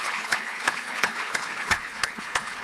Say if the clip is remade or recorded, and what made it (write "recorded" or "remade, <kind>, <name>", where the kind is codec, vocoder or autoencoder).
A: remade, codec, HILCodec